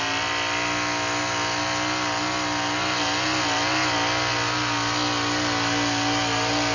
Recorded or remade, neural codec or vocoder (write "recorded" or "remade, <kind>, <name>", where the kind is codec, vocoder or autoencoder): recorded